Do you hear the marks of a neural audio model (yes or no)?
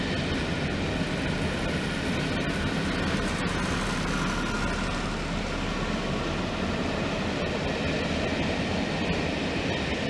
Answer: no